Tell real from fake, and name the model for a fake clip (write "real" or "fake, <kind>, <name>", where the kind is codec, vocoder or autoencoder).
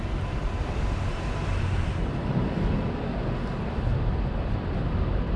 fake, vocoder, BigVGAN v2